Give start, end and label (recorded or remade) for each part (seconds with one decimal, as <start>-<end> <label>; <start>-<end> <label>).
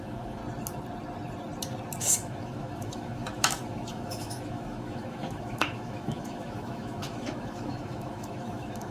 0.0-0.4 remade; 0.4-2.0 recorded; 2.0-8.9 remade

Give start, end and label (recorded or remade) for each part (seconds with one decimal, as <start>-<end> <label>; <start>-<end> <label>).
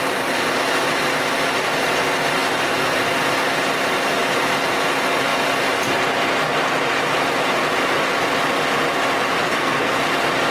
0.0-9.4 recorded; 9.4-10.0 remade; 10.0-10.5 recorded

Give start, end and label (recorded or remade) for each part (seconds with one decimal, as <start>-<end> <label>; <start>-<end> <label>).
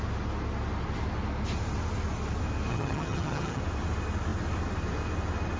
0.0-2.7 recorded; 2.7-3.6 remade; 3.6-5.6 recorded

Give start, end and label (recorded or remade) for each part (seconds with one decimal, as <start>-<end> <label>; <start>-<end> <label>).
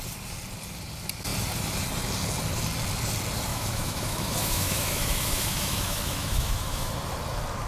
0.0-3.5 recorded; 3.5-6.9 remade; 6.9-7.7 recorded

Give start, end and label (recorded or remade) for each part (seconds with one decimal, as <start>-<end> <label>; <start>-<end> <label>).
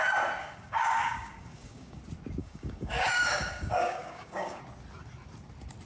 0.0-0.4 recorded; 0.4-2.0 remade; 2.0-2.4 recorded; 2.4-4.6 remade; 4.6-5.9 recorded